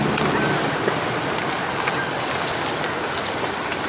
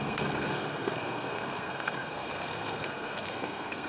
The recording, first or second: first